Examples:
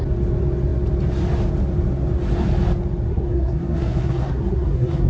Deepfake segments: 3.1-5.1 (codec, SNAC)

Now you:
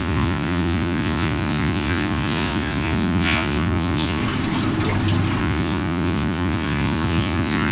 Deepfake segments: 0.0-4.2 (vocoder, Vocos); 5.4-7.7

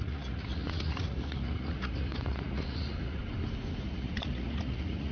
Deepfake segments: 0.0-3.2 (vocoder, Vocos); 3.8-5.1

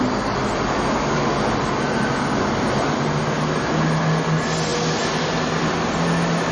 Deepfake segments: none